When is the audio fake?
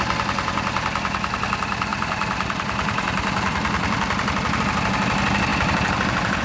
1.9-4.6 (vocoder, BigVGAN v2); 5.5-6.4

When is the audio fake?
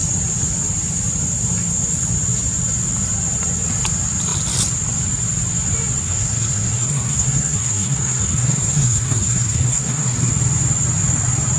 6.0-10.3 (codec, SNAC)